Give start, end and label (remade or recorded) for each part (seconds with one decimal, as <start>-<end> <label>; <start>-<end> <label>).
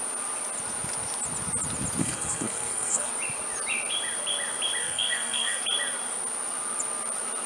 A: 0.0-2.0 recorded; 2.0-3.1 remade; 3.1-4.8 recorded; 4.8-5.6 remade; 5.6-7.5 recorded